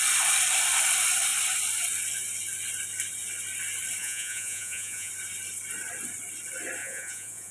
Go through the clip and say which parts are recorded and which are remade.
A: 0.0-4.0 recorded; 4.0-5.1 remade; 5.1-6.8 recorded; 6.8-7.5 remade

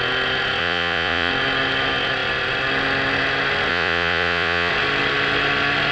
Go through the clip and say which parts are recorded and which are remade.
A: 0.0-0.6 recorded; 0.6-1.3 remade; 1.3-3.7 recorded; 3.7-4.7 remade; 4.7-5.9 recorded

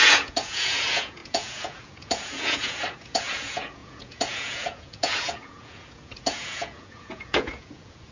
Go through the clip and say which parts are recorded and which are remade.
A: 0.0-8.1 remade